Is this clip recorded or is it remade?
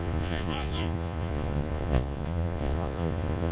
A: remade